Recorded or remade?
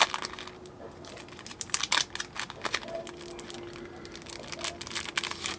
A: recorded